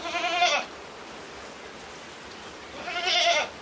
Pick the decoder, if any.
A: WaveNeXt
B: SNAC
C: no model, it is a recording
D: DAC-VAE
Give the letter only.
C